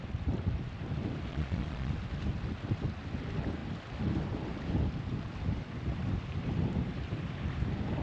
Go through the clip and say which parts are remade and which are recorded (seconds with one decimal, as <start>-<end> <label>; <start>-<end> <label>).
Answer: 0.0-1.3 recorded; 1.3-1.9 remade; 1.9-8.0 recorded